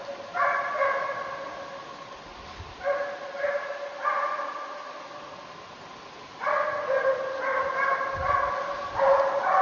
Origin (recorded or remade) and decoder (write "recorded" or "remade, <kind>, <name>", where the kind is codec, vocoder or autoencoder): recorded